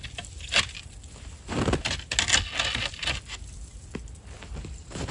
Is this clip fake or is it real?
real